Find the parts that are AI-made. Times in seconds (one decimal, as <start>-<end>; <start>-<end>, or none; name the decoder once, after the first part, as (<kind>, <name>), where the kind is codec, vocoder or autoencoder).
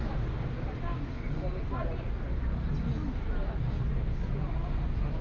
none